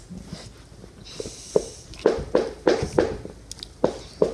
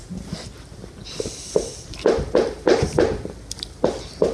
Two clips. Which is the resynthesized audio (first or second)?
second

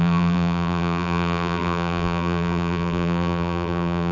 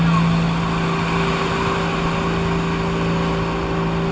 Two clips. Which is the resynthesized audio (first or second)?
first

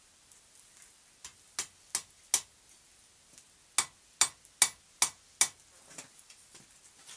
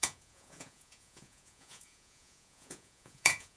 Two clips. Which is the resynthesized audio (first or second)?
second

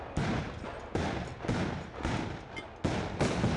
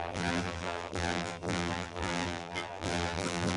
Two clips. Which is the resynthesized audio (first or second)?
second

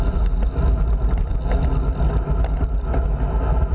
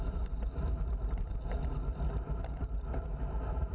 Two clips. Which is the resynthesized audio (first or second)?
second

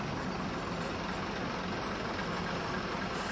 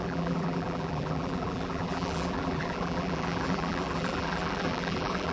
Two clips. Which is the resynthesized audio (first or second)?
second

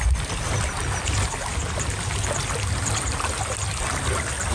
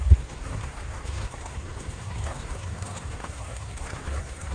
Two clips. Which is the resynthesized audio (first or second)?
second